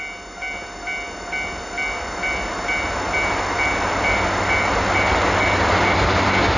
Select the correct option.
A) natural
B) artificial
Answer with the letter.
A